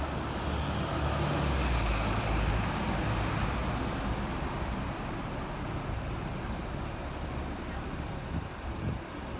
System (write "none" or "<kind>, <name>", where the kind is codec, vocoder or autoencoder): none